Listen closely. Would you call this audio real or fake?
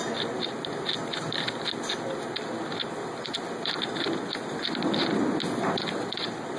real